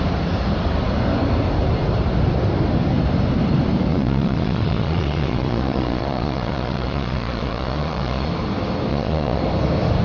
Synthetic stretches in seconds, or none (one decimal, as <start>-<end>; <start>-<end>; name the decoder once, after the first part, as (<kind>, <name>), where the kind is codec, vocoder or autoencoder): 3.9-8.3 (vocoder, Vocos); 8.9-9.4